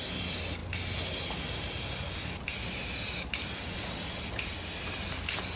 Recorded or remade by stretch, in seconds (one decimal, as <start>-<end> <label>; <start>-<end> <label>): 0.0-5.6 recorded